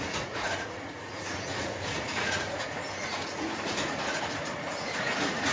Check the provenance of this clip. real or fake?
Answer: fake